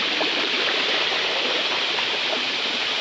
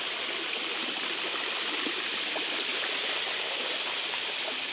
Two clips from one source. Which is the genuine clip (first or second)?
second